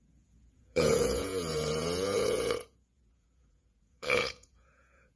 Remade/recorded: remade